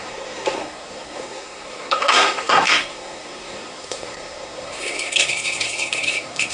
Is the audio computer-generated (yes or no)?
yes